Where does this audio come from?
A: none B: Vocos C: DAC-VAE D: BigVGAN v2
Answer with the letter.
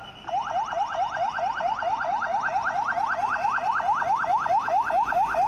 D